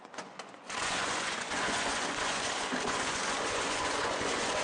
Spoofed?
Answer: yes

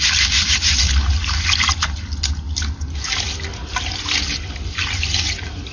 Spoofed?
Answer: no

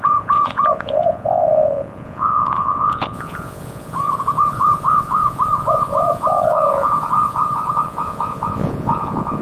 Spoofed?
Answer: yes